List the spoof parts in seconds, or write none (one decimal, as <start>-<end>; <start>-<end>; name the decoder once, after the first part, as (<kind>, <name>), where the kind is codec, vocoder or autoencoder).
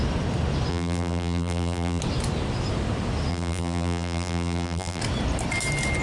0.7-2.0 (vocoder, BigVGAN v2); 3.3-5.0